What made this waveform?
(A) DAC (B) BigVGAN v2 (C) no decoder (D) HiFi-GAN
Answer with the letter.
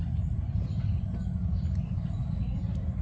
C